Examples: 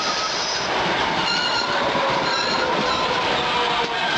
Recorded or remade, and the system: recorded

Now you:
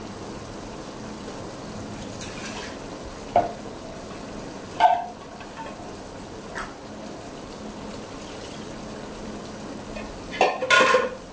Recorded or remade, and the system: recorded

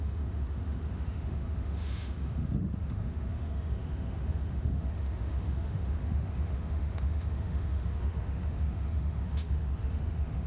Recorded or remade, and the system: remade, autoencoder, DAC-VAE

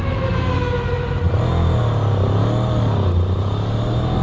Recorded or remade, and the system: recorded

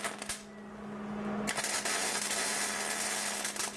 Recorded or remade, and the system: recorded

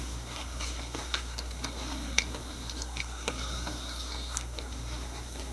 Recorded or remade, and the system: remade, codec, SNAC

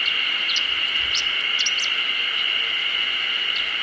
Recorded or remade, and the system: recorded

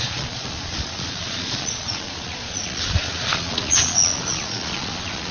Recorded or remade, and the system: remade, vocoder, Vocos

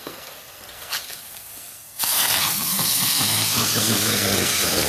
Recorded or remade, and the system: remade, codec, SNAC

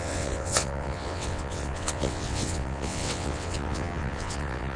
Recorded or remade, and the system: remade, vocoder, WaveNeXt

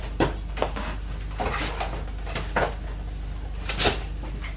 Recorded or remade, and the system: recorded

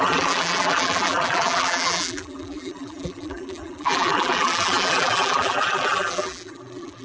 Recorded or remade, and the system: remade, vocoder, BigVGAN v2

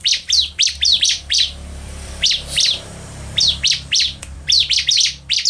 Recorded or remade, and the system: remade, vocoder, BigVGAN v2